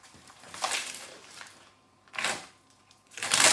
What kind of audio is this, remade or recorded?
remade